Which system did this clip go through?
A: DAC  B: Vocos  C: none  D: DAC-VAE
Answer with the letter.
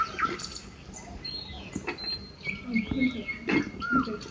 C